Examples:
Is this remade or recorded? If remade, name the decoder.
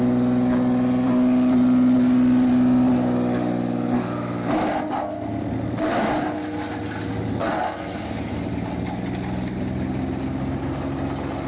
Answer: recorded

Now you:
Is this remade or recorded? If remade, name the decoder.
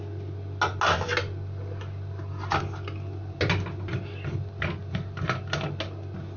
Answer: recorded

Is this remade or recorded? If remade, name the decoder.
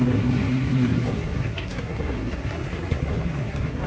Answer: remade, codec, SNAC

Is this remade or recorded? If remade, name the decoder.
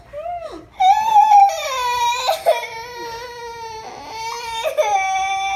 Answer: recorded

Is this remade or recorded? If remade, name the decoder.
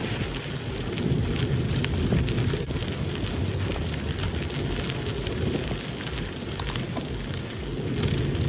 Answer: recorded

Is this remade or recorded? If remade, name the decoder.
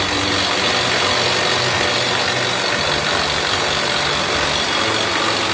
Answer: recorded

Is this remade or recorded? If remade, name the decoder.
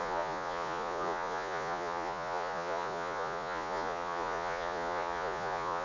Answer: remade, vocoder, Vocos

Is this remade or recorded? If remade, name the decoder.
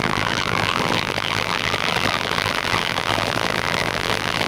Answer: remade, vocoder, BigVGAN v2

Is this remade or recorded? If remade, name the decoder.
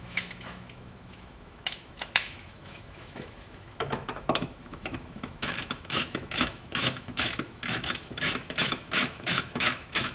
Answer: remade, autoencoder, DAC-VAE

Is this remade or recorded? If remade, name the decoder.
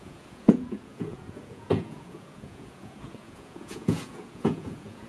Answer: remade, vocoder, Vocos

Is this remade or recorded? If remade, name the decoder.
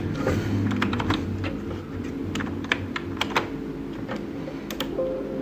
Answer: recorded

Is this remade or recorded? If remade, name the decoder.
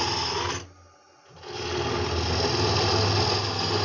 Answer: recorded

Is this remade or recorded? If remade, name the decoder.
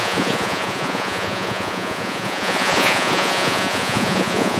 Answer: remade, vocoder, Vocos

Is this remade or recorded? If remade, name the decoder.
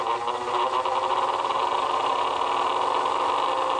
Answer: recorded